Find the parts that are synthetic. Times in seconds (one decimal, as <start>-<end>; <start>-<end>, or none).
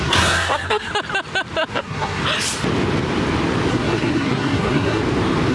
0.0-0.9; 1.7-2.2; 3.7-5.0